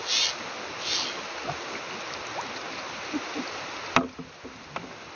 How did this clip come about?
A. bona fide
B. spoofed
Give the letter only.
A